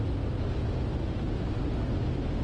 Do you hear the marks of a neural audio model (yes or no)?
no